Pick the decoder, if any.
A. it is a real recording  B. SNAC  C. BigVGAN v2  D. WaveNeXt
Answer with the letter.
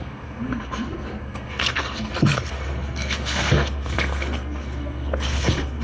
B